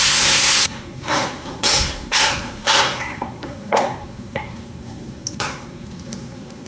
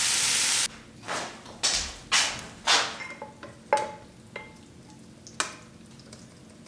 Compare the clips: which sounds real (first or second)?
second